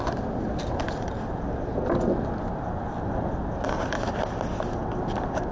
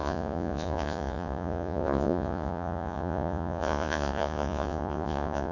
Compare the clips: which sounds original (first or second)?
first